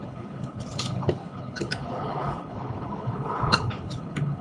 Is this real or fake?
fake